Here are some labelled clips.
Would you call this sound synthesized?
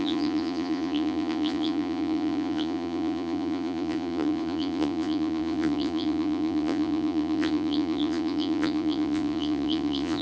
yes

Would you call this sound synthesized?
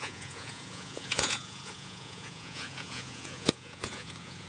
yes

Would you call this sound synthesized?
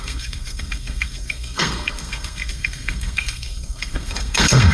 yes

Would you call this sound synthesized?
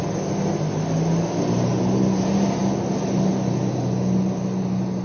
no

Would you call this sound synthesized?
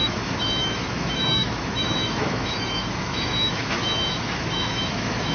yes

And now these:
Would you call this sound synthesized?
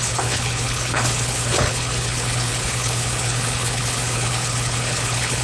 yes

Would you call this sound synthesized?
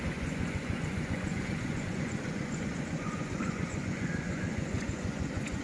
yes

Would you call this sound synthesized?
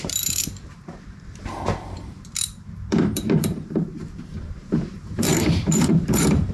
yes